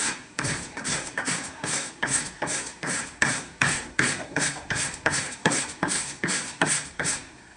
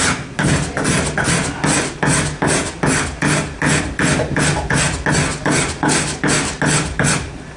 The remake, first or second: first